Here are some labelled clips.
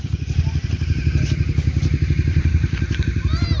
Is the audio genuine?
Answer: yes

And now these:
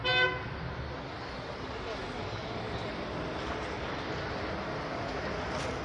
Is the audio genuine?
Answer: yes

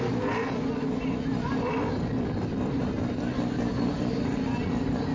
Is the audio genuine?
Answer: yes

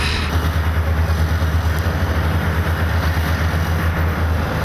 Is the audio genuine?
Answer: yes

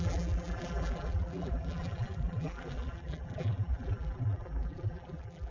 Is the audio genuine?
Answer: no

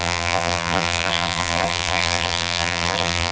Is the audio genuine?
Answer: no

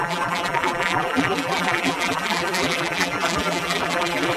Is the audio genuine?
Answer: no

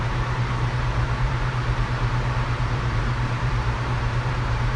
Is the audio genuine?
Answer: no